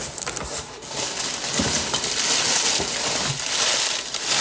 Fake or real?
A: real